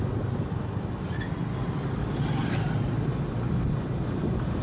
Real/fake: real